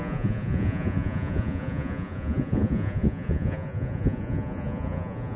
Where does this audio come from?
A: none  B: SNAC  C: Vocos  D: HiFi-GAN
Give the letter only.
C